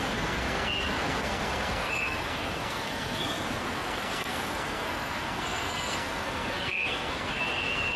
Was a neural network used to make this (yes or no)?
yes